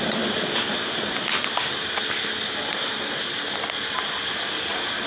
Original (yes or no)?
yes